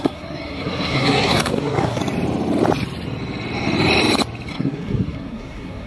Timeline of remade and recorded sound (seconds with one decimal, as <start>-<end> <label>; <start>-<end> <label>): 0.0-2.0 remade; 2.0-4.5 recorded; 4.5-5.9 remade